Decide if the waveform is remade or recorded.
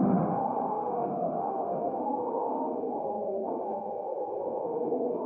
remade